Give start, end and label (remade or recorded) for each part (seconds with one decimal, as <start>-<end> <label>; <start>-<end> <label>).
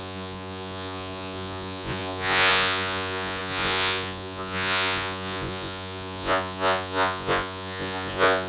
0.0-8.5 remade